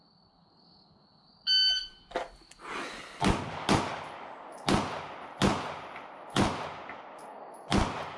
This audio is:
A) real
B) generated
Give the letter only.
A